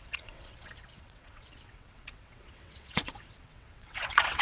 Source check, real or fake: fake